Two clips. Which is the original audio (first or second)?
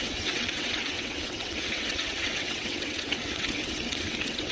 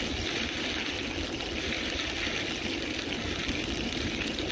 second